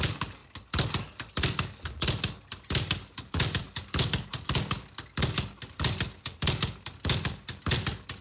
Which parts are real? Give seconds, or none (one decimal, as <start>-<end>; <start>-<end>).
0.0-8.2